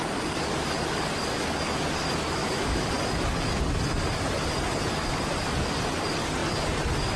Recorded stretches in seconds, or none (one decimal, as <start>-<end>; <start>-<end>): 0.0-2.4; 2.9-7.2